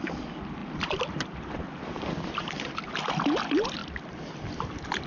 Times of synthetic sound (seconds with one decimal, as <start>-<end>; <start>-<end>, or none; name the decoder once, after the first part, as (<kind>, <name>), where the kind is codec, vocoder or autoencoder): none

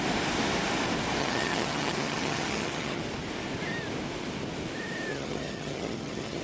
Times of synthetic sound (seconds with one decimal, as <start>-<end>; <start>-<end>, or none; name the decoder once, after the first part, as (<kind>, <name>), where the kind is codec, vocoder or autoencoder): 1.2-3.0 (vocoder, HiFi-GAN); 5.1-6.4

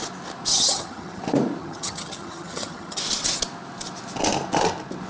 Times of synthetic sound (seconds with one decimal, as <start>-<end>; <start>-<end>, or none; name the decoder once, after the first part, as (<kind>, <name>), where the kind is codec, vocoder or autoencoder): 0.5-1.2 (vocoder, HiFi-GAN); 1.6-3.0